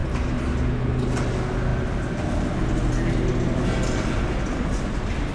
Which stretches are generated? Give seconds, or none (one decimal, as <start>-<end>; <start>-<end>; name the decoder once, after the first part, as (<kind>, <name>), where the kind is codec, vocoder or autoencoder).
none